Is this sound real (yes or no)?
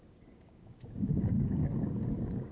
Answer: no